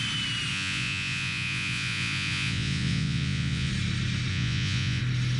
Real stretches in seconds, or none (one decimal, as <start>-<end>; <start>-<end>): 0.0-0.5; 3.7-4.3; 5.0-5.4